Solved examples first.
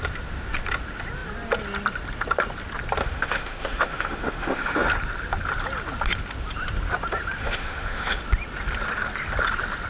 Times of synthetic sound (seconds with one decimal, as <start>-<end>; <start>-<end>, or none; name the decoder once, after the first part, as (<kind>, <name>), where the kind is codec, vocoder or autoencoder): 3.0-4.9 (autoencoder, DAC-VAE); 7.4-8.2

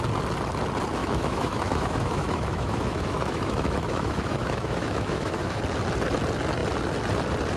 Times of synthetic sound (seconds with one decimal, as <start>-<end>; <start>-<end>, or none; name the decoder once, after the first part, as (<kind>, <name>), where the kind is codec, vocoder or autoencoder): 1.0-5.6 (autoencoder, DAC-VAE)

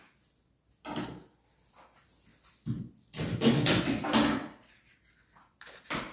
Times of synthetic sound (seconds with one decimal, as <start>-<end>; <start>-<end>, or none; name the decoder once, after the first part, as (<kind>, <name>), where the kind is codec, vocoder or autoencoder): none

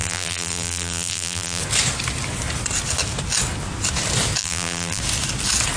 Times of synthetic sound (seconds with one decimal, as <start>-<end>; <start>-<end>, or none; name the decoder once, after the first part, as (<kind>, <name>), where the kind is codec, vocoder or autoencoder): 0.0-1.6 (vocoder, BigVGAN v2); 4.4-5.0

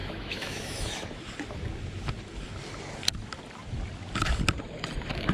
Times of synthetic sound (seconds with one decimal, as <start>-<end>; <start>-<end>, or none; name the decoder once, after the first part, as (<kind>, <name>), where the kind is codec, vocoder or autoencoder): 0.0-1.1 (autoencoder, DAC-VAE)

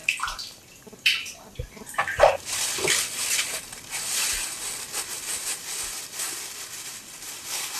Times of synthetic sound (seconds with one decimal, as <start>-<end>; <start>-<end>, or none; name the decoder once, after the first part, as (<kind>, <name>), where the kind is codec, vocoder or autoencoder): 0.0-2.3 (vocoder, BigVGAN v2)